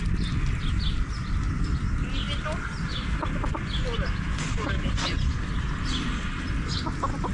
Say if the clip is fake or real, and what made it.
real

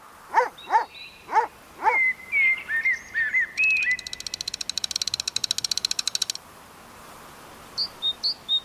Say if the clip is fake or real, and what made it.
real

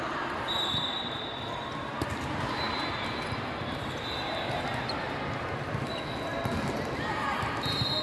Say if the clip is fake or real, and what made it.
real